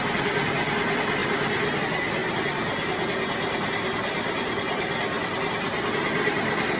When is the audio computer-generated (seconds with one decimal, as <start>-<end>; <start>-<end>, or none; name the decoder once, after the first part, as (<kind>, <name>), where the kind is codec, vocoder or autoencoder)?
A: 1.2-1.8 (vocoder, BigVGAN v2)

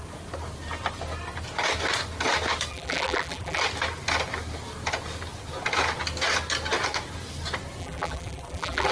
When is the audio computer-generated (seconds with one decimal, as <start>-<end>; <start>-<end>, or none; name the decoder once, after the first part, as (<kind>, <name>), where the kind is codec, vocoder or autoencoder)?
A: 2.7-3.6 (vocoder, BigVGAN v2); 7.8-8.9